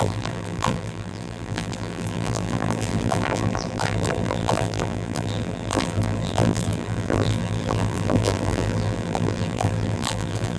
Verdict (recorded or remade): remade